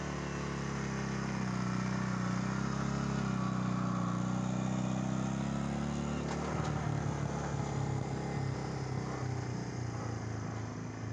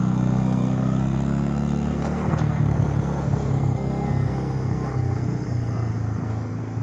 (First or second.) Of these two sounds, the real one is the first